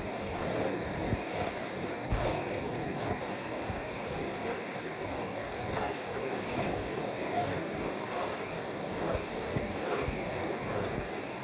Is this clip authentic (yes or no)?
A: no